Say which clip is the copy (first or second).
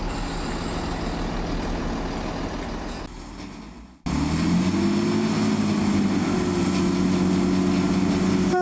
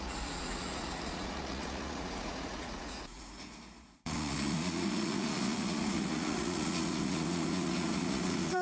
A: second